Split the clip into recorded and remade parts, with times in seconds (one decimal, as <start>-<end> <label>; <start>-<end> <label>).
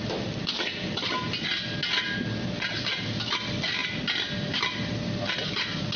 0.0-6.0 recorded